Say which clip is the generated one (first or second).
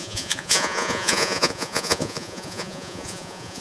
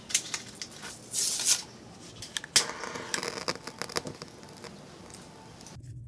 first